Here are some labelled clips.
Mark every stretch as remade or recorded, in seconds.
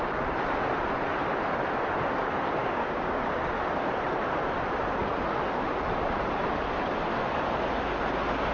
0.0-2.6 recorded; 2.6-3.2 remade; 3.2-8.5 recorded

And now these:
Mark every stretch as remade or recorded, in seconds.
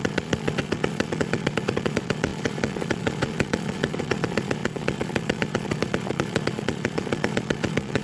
0.0-8.0 remade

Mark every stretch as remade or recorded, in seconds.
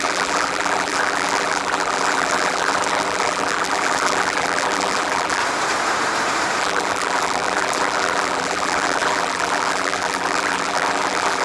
0.0-5.4 remade; 5.4-6.6 recorded; 6.6-11.4 remade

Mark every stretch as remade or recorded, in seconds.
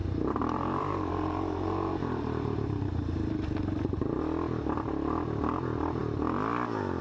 0.0-4.2 remade; 4.2-7.0 recorded